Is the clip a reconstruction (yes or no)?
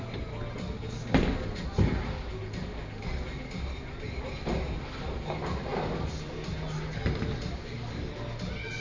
no